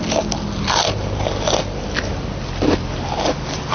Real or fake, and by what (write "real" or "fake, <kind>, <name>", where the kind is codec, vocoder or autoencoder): real